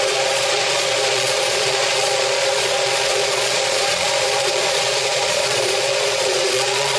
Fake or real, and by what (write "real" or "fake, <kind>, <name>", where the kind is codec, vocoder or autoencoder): fake, vocoder, Vocos